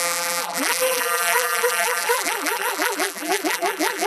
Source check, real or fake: fake